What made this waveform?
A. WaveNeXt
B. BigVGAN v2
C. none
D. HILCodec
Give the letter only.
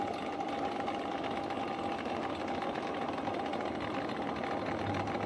C